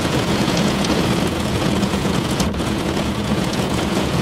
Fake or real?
fake